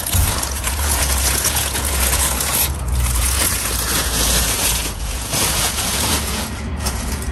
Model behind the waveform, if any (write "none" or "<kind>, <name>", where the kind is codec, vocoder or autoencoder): vocoder, Vocos